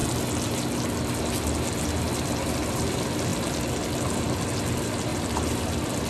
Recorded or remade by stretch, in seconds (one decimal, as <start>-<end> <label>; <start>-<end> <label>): 0.0-5.1 recorded; 5.1-6.1 remade